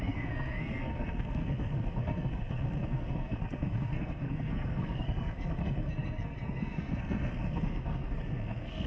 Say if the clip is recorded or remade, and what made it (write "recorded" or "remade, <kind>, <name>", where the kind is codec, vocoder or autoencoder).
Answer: remade, codec, SNAC